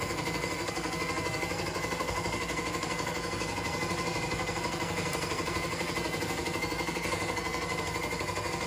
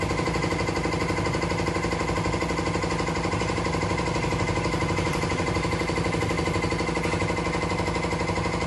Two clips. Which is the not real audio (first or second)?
first